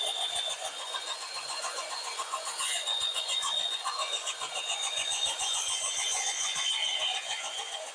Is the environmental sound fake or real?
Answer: fake